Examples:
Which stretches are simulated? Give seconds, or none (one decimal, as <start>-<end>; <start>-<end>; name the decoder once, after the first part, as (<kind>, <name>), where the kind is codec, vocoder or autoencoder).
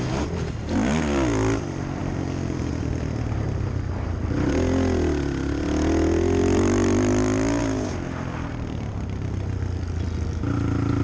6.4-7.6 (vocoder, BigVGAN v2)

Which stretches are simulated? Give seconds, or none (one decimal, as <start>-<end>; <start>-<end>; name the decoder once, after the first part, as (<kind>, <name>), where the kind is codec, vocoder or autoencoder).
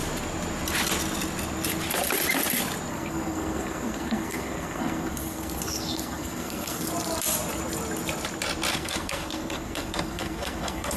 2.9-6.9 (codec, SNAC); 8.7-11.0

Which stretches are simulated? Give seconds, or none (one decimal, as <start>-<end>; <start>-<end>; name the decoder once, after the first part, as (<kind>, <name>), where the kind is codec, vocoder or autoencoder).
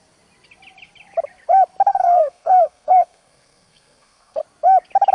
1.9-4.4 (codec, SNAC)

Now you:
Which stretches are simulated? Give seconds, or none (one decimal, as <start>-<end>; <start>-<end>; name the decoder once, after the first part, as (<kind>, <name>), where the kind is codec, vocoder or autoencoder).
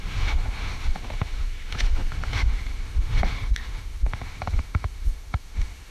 0.0-5.9 (autoencoder, DAC-VAE)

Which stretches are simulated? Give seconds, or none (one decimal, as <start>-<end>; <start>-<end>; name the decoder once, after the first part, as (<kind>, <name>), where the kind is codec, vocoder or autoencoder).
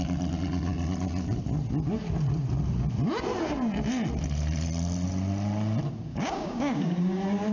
6.1-7.0 (codec, DAC)